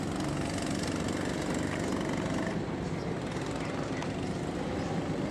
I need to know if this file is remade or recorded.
recorded